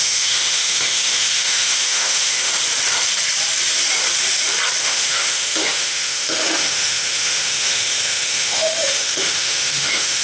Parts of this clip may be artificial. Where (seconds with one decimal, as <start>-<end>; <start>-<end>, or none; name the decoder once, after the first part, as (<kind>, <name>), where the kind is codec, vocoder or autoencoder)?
0.0-2.5 (autoencoder, DAC-VAE); 4.8-10.2